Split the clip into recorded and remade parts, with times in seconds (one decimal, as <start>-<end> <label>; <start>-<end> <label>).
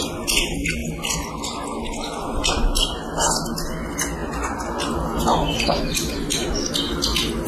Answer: 0.0-7.5 recorded